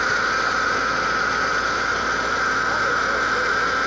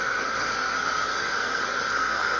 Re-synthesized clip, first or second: second